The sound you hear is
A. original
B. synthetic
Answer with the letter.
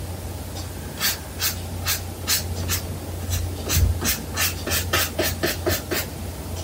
A